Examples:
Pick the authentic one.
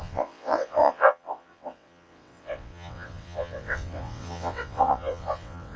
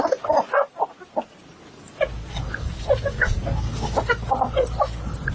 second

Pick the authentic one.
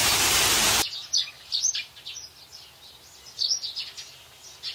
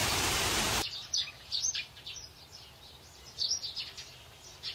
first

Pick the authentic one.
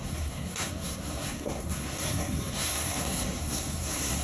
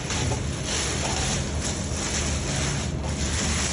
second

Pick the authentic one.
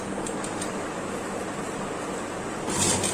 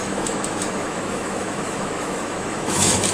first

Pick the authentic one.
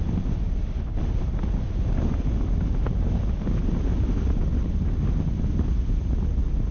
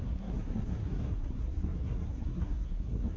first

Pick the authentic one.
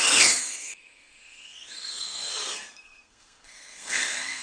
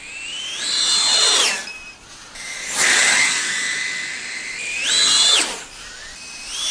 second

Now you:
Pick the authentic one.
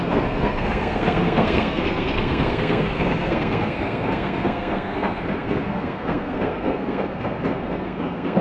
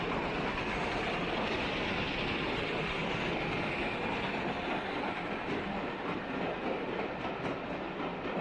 second